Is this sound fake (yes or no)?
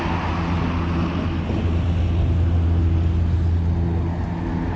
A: no